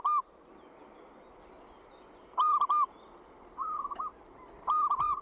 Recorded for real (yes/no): yes